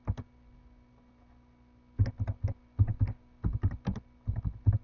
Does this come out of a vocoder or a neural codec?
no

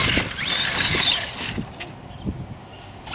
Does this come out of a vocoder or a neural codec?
no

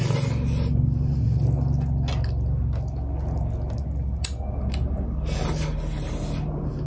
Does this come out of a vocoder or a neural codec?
no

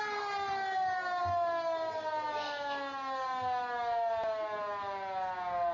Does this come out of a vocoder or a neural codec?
no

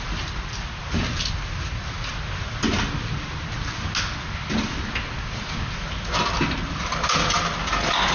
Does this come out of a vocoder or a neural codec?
no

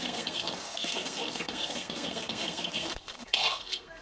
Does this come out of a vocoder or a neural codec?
yes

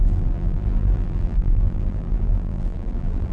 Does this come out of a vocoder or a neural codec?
yes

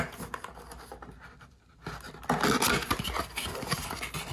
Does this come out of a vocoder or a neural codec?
no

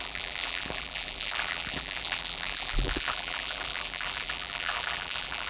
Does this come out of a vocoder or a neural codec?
yes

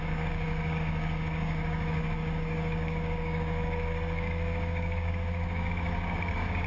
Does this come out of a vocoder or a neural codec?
yes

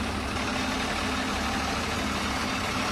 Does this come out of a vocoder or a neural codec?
no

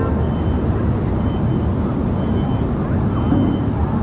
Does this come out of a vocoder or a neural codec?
no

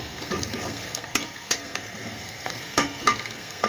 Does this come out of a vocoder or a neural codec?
yes